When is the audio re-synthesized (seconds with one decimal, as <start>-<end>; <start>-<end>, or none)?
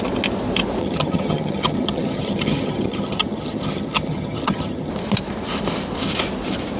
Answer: 0.8-4.9